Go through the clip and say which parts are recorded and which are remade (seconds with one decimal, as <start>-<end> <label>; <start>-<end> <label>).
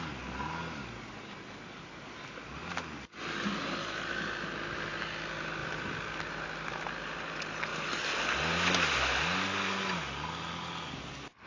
0.0-11.5 recorded